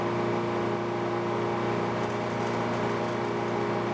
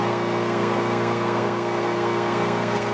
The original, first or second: first